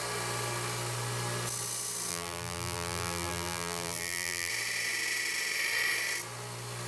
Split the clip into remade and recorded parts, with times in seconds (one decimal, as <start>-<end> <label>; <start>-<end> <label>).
0.0-2.1 recorded; 2.1-4.5 remade; 4.5-6.9 recorded